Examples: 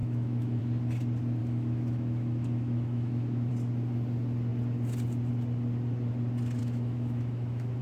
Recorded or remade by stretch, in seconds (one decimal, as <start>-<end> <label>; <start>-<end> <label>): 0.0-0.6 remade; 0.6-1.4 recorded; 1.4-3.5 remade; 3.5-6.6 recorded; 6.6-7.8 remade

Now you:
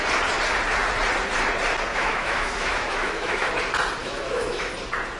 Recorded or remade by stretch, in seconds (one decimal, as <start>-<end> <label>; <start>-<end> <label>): 0.0-1.9 recorded; 1.9-3.5 remade; 3.5-4.0 recorded; 4.0-4.7 remade; 4.7-5.2 recorded

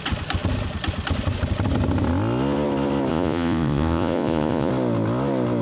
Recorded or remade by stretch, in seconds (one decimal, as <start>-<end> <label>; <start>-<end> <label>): 0.0-3.1 recorded; 3.1-4.7 remade; 4.7-5.6 recorded

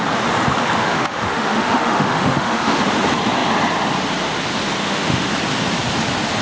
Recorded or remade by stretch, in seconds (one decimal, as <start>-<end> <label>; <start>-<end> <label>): 0.0-0.8 recorded; 0.8-2.8 remade; 2.8-4.8 recorded; 4.8-5.3 remade; 5.3-6.4 recorded

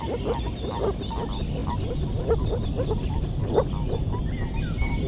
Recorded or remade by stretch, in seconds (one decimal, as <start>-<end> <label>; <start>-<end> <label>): 0.0-5.1 recorded

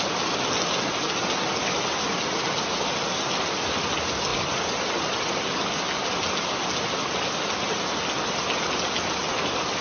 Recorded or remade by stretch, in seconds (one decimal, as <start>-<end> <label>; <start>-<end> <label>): 0.0-9.8 recorded

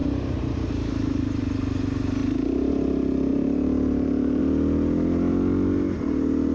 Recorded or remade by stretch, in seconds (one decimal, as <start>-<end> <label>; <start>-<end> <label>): 0.0-1.4 remade; 1.4-2.2 recorded; 2.2-2.7 remade; 2.7-3.3 recorded; 3.3-4.4 remade; 4.4-6.5 recorded